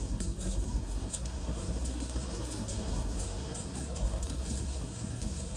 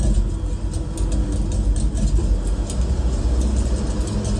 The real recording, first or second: second